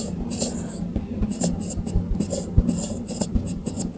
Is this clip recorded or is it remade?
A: recorded